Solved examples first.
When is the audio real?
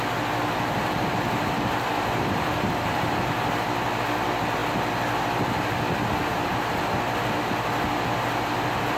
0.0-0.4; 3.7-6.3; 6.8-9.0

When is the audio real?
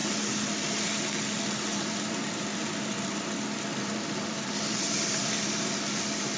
0.0-1.7; 5.5-6.4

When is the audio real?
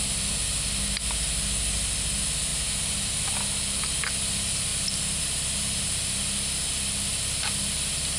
0.0-2.5; 3.1-4.7; 6.2-8.2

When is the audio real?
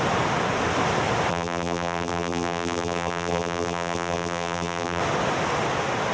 0.0-1.3; 5.0-6.1